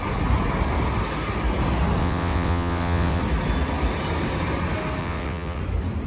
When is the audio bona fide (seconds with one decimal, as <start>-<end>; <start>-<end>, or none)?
0.0-2.0; 3.2-5.0; 5.6-6.1